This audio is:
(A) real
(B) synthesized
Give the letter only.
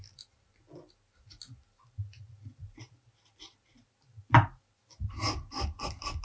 A